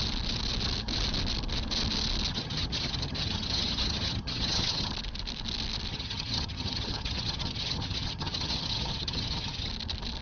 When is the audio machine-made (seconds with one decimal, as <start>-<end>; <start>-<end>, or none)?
2.3-4.9; 5.9-9.7

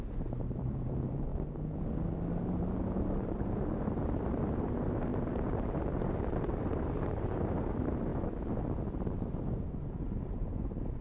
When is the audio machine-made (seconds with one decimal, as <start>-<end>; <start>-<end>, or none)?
0.0-1.3; 3.0-8.1; 9.1-11.0

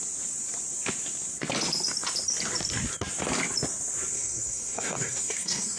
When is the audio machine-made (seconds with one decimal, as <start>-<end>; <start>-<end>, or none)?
4.1-5.8

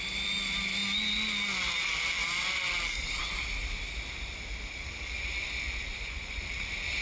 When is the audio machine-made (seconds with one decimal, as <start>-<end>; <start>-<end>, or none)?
5.9-6.4

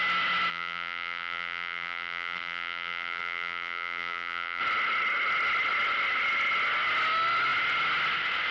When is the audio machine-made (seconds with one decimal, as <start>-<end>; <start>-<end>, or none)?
0.5-4.6